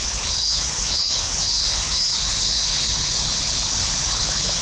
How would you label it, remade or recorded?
remade